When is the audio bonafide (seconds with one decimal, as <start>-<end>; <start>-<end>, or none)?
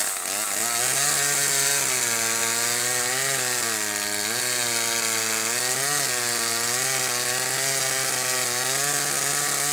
0.0-9.7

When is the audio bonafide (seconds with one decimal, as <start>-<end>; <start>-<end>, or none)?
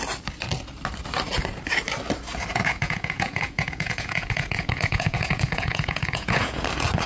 0.0-2.5; 6.6-7.1